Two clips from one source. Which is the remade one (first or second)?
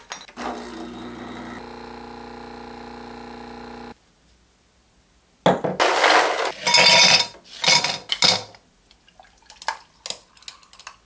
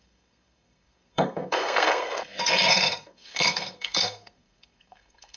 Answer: second